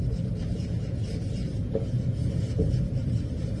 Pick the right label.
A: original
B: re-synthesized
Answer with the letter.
A